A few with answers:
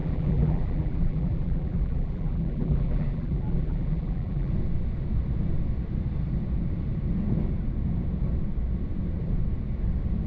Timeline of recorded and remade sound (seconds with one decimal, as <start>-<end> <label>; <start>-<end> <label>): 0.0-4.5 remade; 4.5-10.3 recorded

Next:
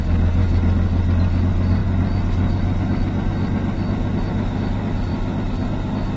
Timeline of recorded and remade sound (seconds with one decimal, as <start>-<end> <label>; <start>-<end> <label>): 0.0-6.2 recorded

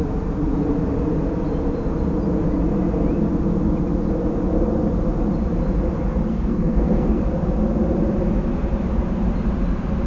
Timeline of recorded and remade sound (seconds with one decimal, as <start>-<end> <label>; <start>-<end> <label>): 0.0-6.3 recorded; 6.3-7.2 remade; 7.2-10.1 recorded

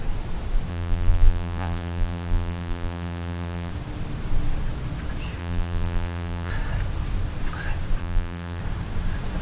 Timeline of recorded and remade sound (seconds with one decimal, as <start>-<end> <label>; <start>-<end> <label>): 0.0-0.7 recorded; 0.7-3.7 remade; 3.7-5.4 recorded; 5.4-6.5 remade; 6.5-8.0 recorded; 8.0-8.6 remade; 8.6-9.4 recorded

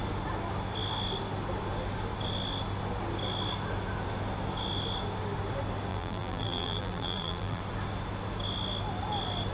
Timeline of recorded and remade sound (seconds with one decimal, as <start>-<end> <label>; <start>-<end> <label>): 0.0-5.9 recorded; 5.9-7.6 remade; 7.6-9.5 recorded